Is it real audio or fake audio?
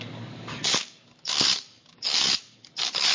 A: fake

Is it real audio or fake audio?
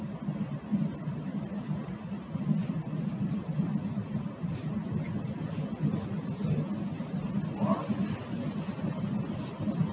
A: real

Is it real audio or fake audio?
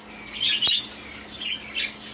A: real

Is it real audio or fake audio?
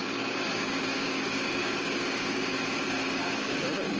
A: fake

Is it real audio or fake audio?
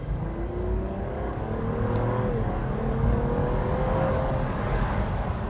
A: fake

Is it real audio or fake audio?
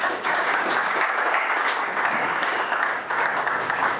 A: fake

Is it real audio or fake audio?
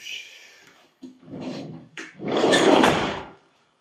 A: fake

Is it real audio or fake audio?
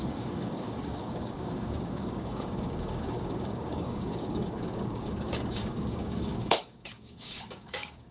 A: fake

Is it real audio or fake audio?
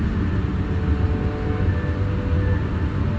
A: real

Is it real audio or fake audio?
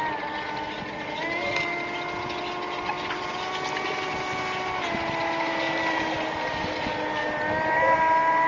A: real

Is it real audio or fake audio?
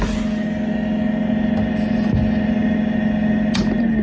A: real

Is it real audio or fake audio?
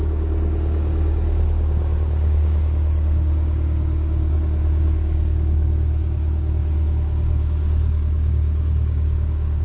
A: fake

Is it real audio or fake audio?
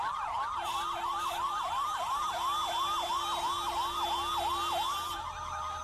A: real